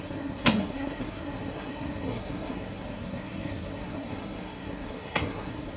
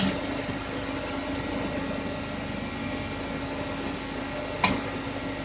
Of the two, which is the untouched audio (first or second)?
second